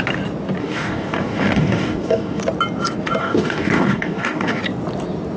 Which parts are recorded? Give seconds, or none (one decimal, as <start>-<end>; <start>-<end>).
0.0-0.6; 2.4-3.2; 4.6-5.4